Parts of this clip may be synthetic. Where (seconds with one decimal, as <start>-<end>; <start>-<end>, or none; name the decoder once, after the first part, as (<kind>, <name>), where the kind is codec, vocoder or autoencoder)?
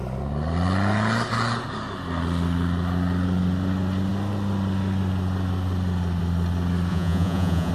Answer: 6.9-7.7 (vocoder, Vocos)